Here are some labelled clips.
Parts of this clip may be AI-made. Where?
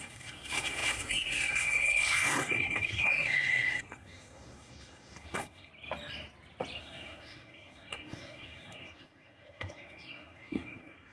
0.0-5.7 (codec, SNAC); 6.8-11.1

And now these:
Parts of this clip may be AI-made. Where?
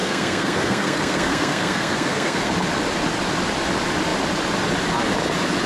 0.0-2.5 (codec, SNAC)